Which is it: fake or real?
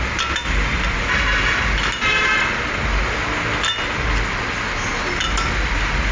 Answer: real